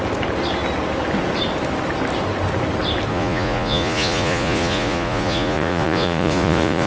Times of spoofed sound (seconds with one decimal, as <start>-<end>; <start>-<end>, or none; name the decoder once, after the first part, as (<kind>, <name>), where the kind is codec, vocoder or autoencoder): 3.1-6.9 (vocoder, Vocos)